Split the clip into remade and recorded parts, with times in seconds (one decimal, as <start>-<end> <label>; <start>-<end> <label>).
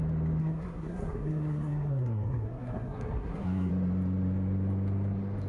0.0-0.4 recorded; 0.4-3.7 remade; 3.7-5.5 recorded